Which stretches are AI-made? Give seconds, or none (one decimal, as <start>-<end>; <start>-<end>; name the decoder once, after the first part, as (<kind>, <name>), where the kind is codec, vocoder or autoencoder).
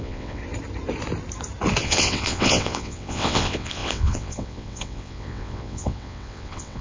0.0-0.4 (vocoder, WaveNeXt); 1.8-6.8